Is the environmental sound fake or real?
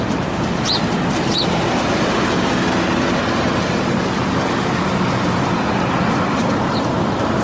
real